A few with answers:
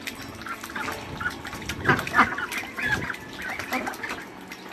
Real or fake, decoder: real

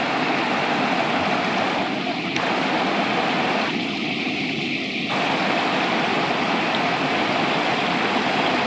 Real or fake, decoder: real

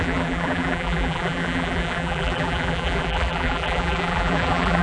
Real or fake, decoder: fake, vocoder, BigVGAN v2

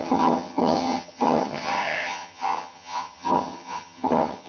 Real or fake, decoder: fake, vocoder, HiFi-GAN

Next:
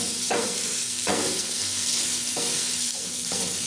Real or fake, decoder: fake, codec, SNAC